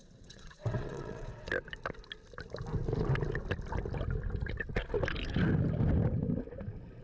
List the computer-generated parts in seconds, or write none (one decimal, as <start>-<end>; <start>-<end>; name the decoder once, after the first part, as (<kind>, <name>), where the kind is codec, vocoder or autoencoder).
0.0-1.5 (vocoder, WaveNeXt)